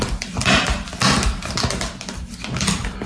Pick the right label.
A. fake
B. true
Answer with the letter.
B